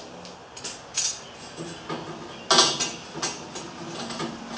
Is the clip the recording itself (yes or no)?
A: yes